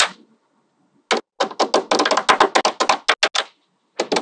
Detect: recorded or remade recorded